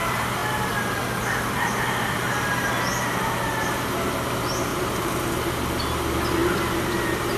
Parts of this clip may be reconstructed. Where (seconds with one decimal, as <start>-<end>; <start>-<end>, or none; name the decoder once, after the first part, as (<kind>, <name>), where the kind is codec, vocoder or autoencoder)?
4.7-5.3 (vocoder, BigVGAN v2)